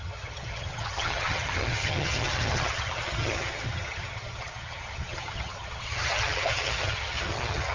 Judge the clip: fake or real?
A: fake